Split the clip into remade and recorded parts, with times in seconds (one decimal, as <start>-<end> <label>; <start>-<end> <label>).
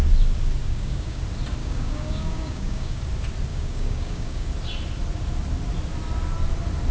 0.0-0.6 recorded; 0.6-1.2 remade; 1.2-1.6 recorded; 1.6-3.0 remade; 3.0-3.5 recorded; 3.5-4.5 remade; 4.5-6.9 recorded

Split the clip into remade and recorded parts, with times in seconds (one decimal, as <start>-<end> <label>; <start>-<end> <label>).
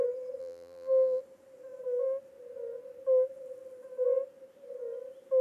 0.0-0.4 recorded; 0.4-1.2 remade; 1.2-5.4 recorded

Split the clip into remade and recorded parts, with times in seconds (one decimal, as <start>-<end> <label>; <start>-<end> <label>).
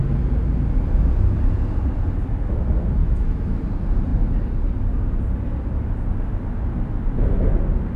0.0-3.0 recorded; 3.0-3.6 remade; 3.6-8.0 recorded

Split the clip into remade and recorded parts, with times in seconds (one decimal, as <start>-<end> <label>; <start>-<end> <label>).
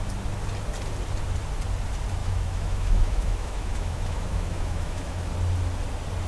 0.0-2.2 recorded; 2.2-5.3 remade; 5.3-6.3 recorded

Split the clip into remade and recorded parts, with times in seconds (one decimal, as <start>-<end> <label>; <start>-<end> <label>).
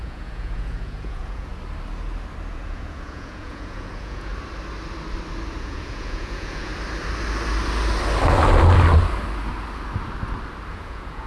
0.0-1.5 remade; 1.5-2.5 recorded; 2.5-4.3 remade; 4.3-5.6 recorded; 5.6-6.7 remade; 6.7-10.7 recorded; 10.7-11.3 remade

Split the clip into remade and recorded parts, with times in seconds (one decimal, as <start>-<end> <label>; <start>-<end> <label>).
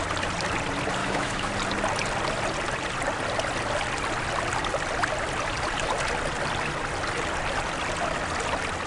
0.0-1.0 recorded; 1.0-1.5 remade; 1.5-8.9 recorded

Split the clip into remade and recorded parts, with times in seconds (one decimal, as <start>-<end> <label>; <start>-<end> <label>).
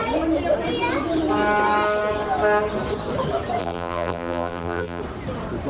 0.0-3.6 recorded; 3.6-5.0 remade; 5.0-5.7 recorded